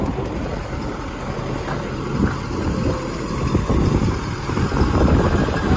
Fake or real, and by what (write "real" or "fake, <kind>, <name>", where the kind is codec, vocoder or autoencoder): real